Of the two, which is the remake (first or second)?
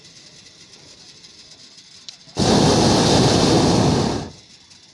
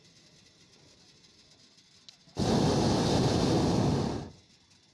first